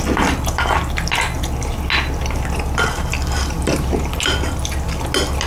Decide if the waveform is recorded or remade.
recorded